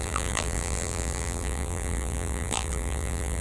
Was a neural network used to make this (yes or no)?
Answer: yes